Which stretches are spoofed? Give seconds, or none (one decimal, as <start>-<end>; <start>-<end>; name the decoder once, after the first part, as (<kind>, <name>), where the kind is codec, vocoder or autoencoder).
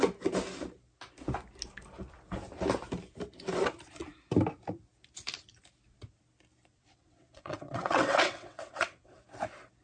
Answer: 6.7-9.2 (vocoder, WaveNeXt)